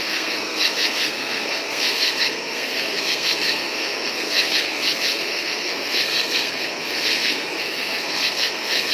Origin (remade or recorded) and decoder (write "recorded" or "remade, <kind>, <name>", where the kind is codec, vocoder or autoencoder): remade, codec, SNAC